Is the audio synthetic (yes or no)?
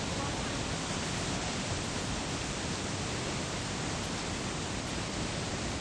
no